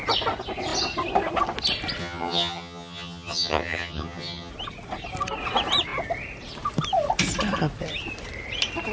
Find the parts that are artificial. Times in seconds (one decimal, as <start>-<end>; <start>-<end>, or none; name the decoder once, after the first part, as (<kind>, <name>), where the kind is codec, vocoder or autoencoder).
2.0-4.5 (vocoder, HiFi-GAN)